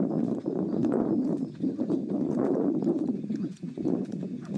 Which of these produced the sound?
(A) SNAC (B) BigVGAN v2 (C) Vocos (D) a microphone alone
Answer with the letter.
C